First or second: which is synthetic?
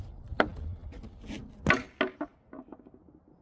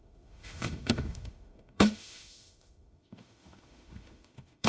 second